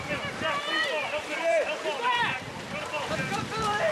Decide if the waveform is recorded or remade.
remade